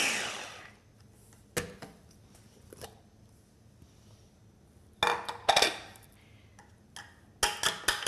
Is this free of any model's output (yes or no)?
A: yes